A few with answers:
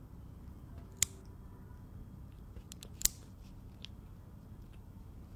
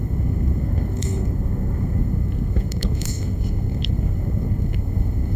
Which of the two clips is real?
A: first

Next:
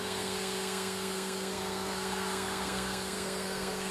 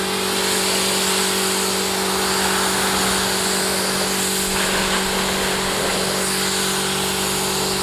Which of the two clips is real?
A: second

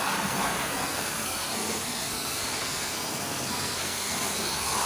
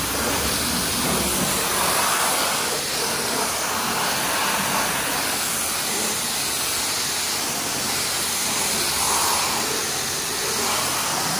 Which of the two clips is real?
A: second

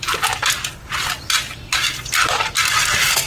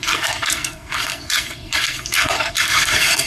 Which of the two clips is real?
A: first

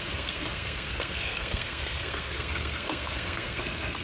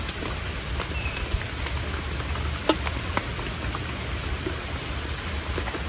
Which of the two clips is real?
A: second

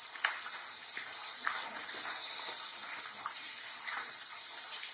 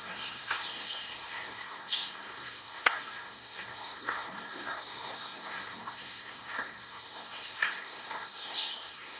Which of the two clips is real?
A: first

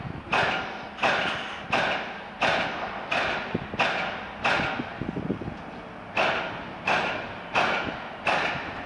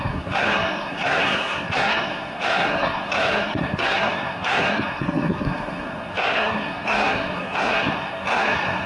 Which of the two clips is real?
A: first